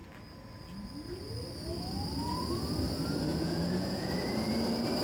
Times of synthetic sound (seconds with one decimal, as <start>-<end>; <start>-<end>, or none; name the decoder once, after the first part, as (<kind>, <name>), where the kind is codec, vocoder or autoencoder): 3.3-4.1 (vocoder, Vocos)